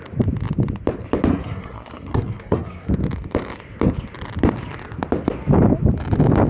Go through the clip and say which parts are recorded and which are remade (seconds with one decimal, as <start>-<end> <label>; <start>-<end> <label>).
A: 0.0-1.3 recorded; 1.3-2.9 remade; 2.9-6.5 recorded